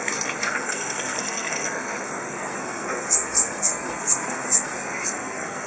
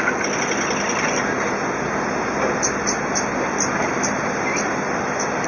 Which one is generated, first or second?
first